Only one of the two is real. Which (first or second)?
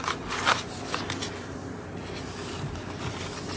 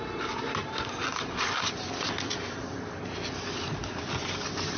first